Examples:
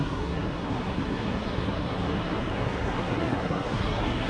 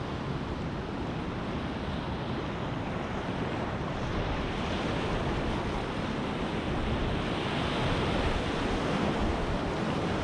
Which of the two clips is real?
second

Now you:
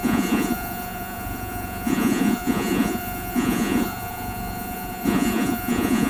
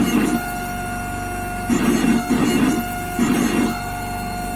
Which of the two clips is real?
second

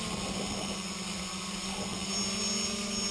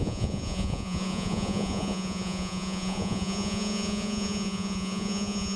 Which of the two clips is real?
first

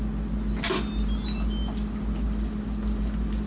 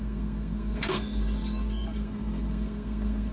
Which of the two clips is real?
first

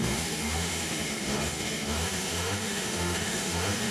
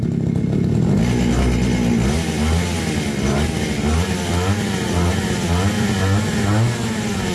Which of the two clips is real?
second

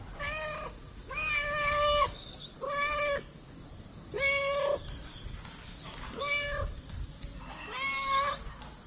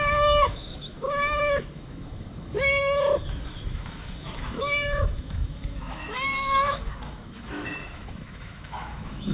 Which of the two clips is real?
first